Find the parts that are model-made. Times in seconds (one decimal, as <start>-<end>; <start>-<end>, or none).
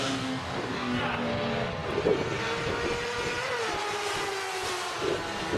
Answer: 0.0-1.0